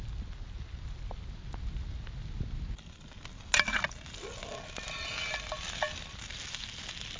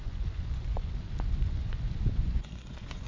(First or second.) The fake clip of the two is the second